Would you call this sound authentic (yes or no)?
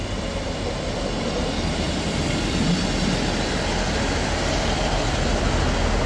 yes